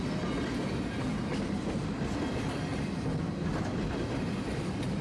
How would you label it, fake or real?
real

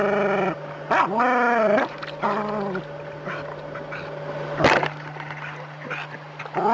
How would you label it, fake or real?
real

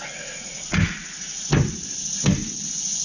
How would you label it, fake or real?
real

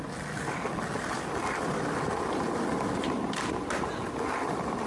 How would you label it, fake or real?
real